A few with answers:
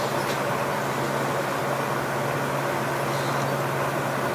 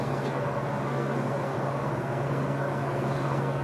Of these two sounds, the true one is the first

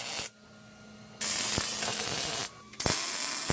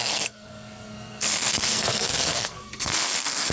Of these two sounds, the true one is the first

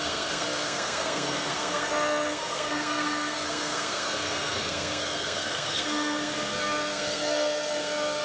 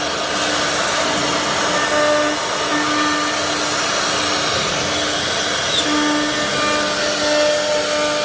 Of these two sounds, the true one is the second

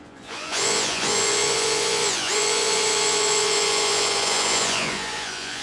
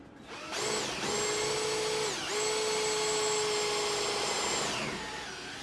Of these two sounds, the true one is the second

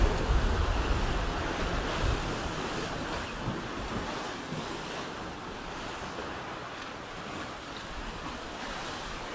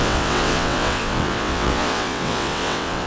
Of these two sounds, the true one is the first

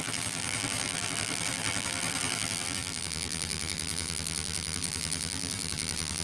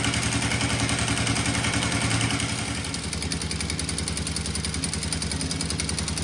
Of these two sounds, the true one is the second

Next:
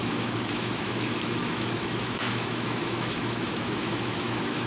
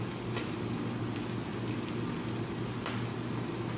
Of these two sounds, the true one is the second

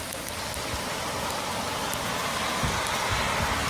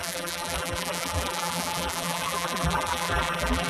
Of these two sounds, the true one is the first